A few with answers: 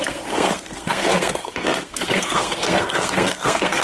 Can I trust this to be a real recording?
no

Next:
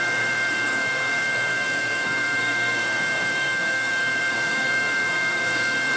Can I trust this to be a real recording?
no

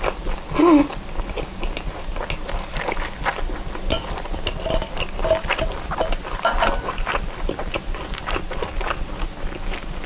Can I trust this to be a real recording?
yes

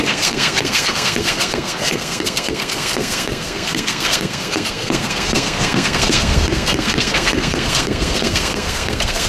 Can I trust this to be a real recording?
no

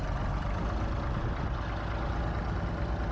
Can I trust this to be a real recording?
yes